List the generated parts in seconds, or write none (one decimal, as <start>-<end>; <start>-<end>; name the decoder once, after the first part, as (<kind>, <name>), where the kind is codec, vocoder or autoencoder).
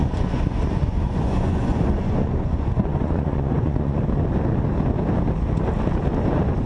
0.0-4.0 (vocoder, Vocos)